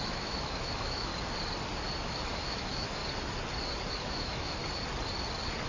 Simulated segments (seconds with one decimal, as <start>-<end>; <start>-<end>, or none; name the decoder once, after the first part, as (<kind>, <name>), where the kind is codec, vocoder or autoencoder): 0.0-1.1 (autoencoder, DAC-VAE); 2.0-3.0; 3.9-4.6

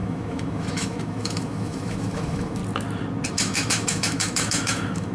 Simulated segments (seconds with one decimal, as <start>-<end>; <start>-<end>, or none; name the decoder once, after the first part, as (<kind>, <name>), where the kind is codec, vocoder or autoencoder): 0.0-2.6 (autoencoder, DAC-VAE); 3.3-5.1

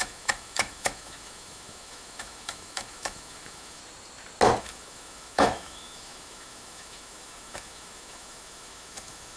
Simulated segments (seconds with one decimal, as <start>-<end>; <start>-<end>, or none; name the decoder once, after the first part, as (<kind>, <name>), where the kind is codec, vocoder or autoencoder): 0.0-3.8 (autoencoder, DAC-VAE); 4.6-9.4

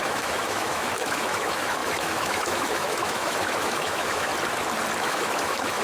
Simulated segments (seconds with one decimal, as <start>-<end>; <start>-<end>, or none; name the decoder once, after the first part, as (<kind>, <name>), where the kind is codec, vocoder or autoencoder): 0.0-4.3 (autoencoder, DAC-VAE); 5.0-5.8

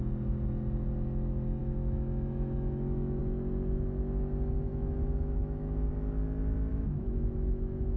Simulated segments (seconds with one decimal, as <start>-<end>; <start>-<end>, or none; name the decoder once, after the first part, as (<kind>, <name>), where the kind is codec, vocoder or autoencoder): 1.6-3.2 (autoencoder, DAC-VAE); 4.7-5.9; 6.7-8.0

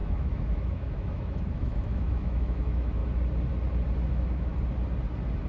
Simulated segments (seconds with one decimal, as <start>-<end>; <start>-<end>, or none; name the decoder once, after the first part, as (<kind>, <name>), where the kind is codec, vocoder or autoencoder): 0.0-3.0 (autoencoder, DAC-VAE); 4.1-4.5